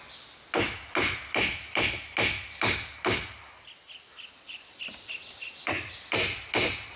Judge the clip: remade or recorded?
recorded